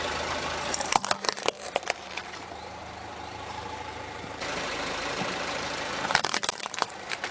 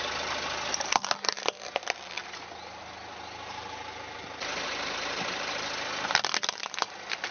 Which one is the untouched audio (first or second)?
second